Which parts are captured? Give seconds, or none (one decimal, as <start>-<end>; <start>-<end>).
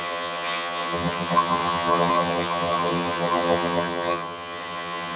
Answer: none